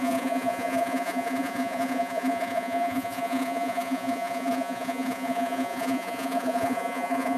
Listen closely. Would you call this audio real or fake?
fake